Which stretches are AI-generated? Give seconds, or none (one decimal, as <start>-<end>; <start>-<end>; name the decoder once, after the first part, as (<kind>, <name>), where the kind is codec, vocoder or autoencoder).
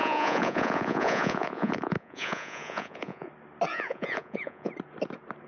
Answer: 0.0-3.3 (vocoder, Vocos); 3.7-4.7